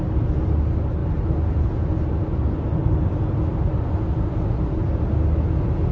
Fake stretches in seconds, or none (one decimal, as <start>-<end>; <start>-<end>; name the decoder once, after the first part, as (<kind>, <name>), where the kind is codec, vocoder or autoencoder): 1.0-2.3 (vocoder, BigVGAN v2)